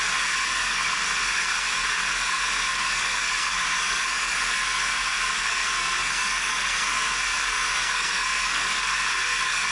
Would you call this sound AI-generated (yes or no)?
yes